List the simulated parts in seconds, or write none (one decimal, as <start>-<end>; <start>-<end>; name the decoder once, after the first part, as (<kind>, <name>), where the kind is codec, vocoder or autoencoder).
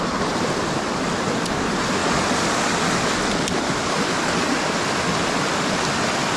none